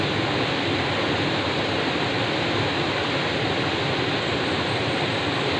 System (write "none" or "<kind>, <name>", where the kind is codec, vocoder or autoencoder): none